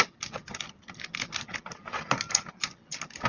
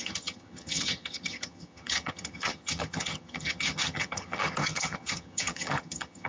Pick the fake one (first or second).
second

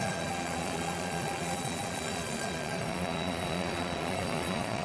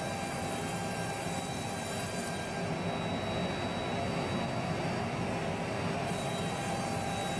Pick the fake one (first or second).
first